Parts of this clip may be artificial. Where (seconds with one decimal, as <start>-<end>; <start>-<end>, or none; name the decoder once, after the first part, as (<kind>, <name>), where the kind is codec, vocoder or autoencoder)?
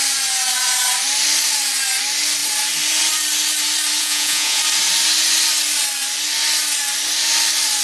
4.0-4.6 (vocoder, Vocos)